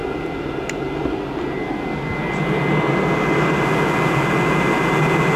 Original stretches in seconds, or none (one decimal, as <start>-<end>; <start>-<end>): 0.0-5.4